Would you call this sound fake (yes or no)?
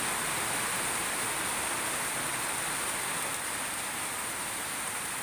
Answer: no